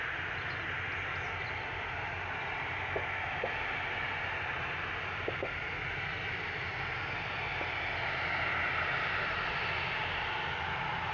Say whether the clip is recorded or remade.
recorded